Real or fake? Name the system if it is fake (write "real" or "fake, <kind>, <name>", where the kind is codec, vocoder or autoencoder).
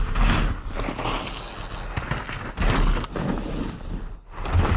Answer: real